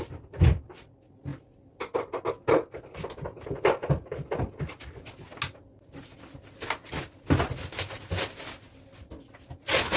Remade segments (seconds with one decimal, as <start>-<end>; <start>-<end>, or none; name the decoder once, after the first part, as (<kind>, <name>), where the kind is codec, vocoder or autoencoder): none